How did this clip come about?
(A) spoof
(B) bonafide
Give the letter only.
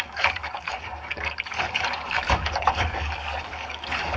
A